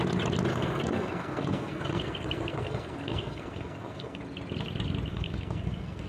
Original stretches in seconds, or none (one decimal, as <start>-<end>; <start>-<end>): 0.0-0.5; 4.2-5.1